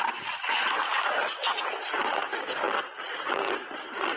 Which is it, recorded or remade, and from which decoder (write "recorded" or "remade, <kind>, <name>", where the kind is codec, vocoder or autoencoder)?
recorded